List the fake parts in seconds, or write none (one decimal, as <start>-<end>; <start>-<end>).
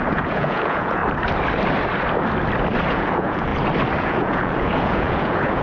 0.0-1.0; 2.9-3.5; 4.0-5.6